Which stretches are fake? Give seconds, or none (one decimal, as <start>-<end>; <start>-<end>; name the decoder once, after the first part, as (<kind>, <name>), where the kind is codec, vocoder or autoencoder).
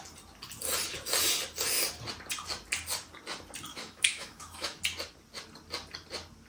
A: 3.7-4.8 (autoencoder, DAC-VAE)